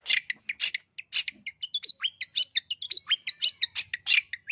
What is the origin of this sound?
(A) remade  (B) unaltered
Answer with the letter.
B